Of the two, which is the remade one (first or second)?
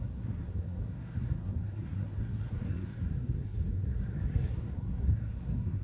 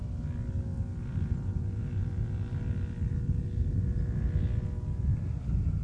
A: first